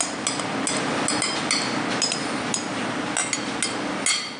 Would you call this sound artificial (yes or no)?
no